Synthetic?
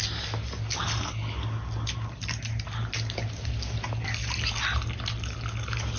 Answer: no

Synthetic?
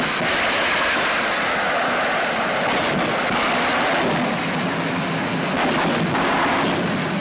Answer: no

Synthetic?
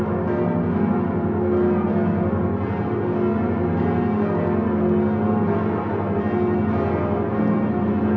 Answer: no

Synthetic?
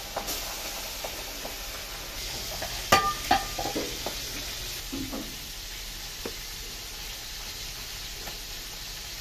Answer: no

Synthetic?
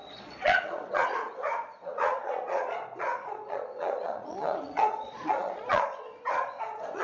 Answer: yes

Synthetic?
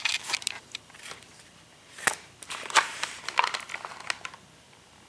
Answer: no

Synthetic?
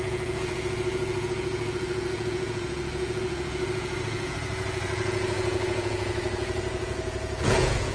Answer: yes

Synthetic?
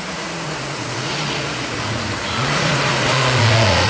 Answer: yes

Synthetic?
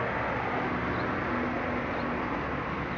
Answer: no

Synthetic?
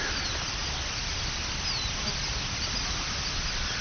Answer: no